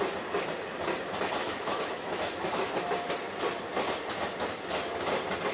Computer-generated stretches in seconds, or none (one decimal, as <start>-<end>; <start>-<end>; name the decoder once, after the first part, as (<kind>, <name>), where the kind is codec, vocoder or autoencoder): 1.4-2.7 (autoencoder, DAC-VAE)